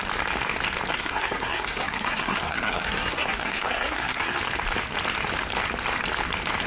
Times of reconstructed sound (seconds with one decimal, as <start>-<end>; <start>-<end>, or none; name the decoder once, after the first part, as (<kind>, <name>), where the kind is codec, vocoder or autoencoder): 1.0-4.4 (codec, SNAC)